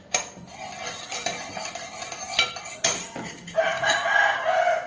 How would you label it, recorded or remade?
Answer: recorded